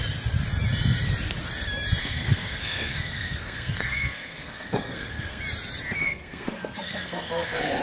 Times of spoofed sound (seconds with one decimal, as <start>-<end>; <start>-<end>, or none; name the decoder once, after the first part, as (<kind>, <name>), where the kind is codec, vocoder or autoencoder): 2.0-5.4 (codec, SNAC); 6.0-7.8